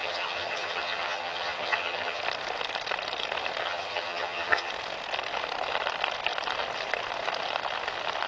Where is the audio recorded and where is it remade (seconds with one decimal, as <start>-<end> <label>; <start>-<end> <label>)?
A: 0.0-2.2 remade; 2.2-3.6 recorded; 3.6-4.7 remade; 4.7-8.3 recorded